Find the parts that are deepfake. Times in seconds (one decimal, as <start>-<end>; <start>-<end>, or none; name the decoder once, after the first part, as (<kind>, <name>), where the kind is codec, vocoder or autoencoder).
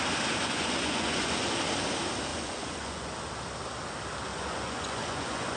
0.4-1.5 (vocoder, Vocos); 2.3-3.1; 4.3-5.6